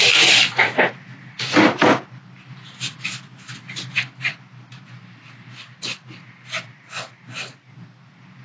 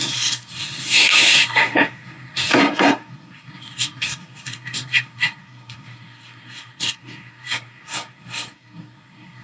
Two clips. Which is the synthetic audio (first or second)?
second